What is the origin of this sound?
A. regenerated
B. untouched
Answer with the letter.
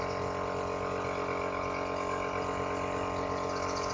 B